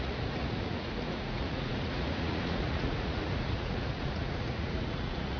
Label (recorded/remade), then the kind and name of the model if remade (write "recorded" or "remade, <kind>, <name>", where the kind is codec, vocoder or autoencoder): remade, vocoder, Vocos